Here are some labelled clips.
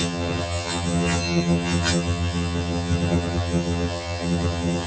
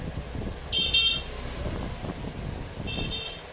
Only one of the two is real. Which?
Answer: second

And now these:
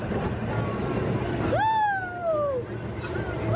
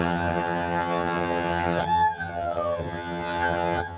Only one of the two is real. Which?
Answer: first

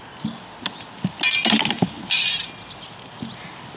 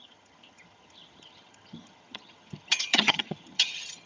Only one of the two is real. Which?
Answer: first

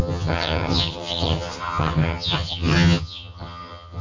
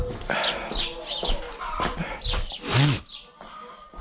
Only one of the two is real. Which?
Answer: second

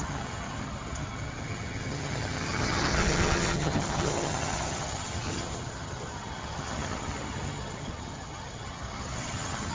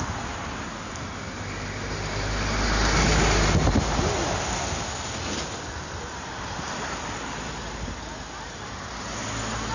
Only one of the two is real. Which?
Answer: second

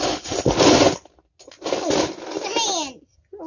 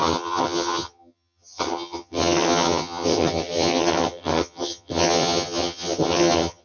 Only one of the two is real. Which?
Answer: first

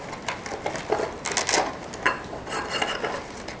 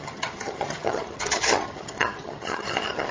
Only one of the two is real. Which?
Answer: first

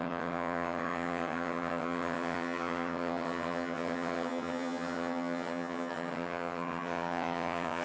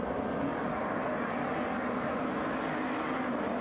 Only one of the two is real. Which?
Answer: second